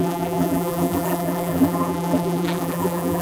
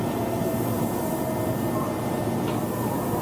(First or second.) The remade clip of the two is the first